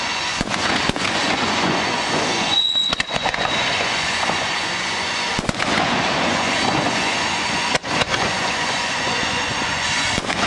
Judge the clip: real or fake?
fake